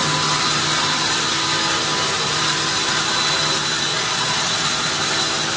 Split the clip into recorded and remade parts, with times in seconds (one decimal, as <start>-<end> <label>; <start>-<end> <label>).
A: 0.0-3.9 recorded; 3.9-4.9 remade; 4.9-5.6 recorded